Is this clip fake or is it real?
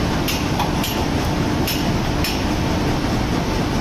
real